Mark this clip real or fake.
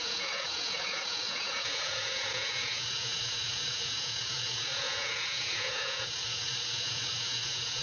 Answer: fake